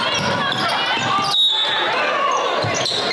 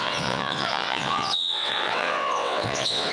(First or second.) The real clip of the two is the first